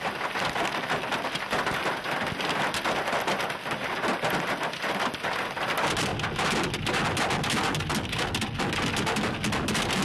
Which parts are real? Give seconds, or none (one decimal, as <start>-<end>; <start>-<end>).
0.0-10.0